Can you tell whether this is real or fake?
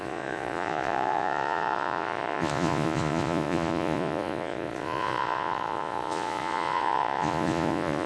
fake